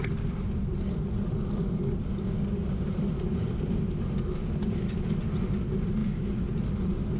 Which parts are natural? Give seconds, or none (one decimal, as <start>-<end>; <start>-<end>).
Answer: 0.0-7.2